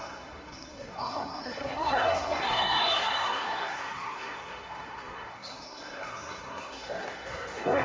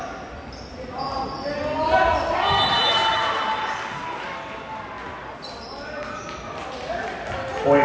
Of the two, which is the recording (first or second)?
second